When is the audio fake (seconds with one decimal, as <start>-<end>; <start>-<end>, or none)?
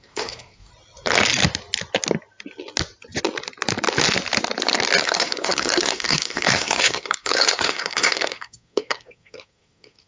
0.0-0.7; 5.0-10.1